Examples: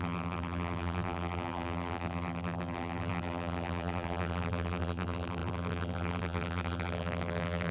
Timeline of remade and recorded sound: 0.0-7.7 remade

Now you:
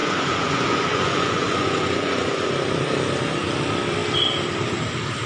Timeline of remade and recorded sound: 0.0-2.5 remade; 2.5-5.3 recorded

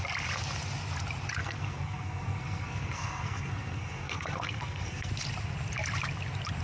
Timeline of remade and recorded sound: 0.0-1.4 recorded; 1.4-5.1 remade; 5.1-6.6 recorded

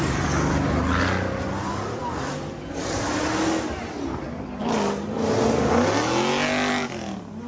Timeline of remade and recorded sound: 0.0-7.5 recorded

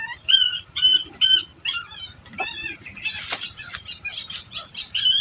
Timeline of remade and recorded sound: 0.0-5.2 recorded